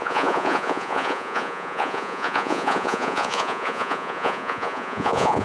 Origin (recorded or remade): remade